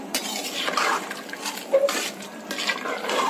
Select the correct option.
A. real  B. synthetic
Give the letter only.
A